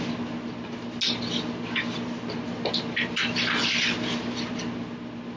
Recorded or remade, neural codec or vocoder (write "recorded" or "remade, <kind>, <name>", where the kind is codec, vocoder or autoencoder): recorded